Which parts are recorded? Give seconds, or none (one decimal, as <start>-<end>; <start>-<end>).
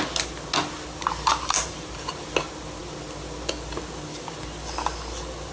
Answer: 0.0-1.3; 1.9-5.5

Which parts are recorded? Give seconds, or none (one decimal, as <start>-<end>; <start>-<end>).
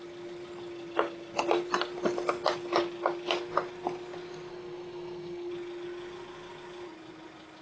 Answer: 0.0-4.5; 5.5-7.6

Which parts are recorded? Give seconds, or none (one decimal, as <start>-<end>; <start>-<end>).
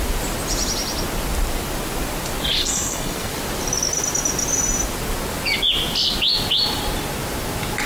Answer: 0.0-2.6; 3.3-7.9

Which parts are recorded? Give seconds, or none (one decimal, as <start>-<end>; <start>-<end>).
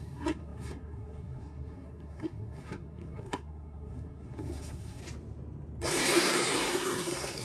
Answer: 5.0-5.8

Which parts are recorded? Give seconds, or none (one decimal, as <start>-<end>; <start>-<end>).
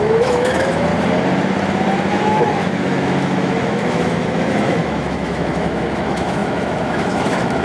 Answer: 0.9-2.1